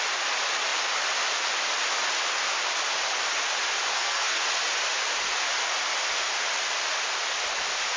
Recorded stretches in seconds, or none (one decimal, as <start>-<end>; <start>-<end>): 0.0-3.9; 4.4-8.0